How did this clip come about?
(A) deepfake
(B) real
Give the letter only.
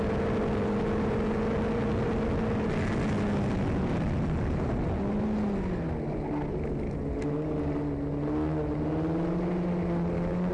B